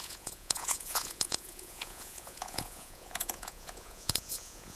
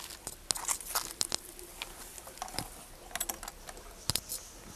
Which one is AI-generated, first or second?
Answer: first